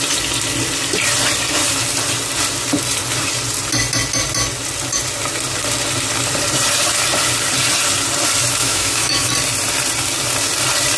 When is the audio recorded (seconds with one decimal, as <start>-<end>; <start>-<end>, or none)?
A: 0.0-8.6; 9.3-11.0